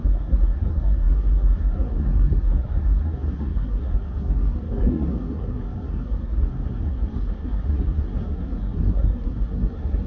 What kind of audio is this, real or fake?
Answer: fake